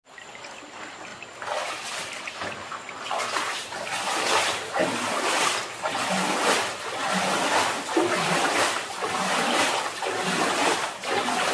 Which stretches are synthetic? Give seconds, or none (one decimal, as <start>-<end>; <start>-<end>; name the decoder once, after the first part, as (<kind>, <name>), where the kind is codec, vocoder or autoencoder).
none